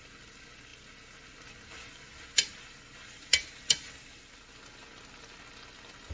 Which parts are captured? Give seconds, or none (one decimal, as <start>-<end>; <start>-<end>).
0.0-6.1